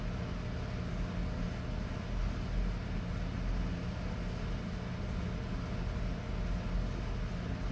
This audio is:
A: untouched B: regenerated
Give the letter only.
A